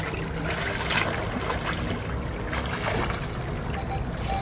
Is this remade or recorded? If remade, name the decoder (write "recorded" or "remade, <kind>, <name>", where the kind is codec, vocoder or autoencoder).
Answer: recorded